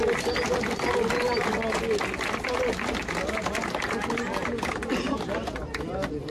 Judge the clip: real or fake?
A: real